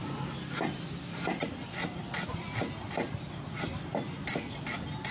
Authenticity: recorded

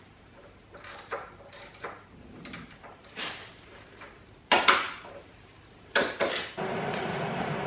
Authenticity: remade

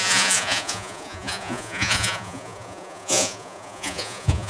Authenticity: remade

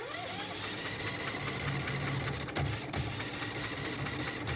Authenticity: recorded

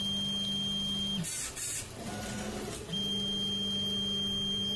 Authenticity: recorded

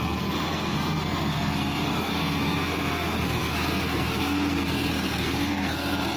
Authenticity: remade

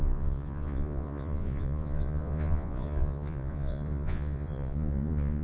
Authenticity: remade